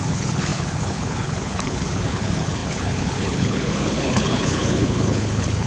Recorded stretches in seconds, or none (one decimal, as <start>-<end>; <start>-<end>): none